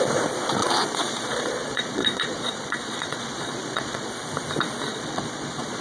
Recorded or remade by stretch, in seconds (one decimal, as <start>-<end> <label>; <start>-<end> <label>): 0.0-0.6 recorded; 0.6-4.1 remade; 4.1-4.9 recorded; 4.9-5.8 remade